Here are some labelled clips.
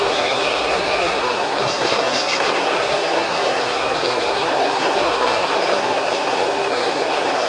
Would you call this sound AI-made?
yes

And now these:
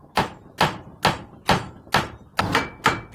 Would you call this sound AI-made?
no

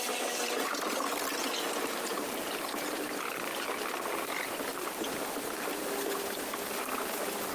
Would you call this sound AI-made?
no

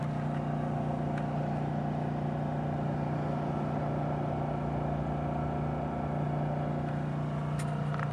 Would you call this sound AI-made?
no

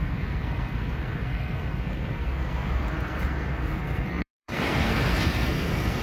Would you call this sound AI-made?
yes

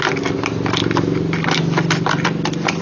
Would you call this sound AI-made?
no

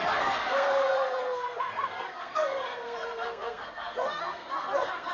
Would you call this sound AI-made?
yes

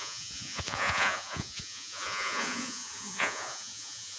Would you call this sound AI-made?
yes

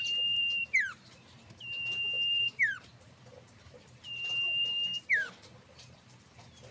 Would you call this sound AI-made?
yes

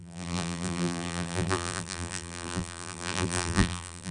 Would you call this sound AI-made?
yes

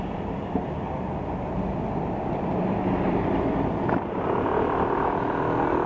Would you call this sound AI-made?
yes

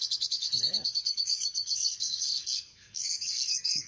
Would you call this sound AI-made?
yes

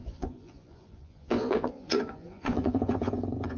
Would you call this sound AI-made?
yes